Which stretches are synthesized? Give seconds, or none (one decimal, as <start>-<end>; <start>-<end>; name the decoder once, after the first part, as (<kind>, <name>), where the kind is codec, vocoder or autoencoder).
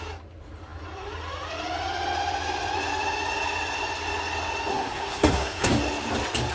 4.7-5.7 (codec, SNAC)